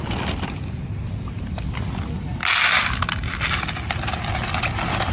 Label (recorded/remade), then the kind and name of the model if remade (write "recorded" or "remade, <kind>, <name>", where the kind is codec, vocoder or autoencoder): recorded